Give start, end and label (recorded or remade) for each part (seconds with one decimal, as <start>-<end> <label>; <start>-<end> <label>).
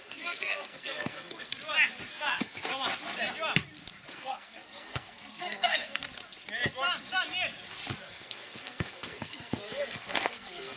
0.0-1.5 remade; 1.5-2.1 recorded; 2.1-2.7 remade; 2.7-4.1 recorded; 4.1-6.0 remade; 6.0-8.0 recorded; 8.0-10.8 remade